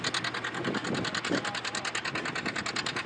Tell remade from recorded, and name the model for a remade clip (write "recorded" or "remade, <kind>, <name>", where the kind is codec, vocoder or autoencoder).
recorded